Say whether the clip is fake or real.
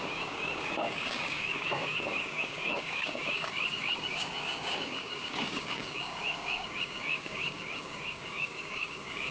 fake